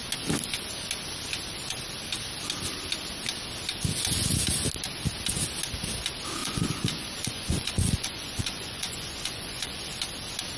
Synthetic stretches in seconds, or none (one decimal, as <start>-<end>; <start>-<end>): 6.4-9.8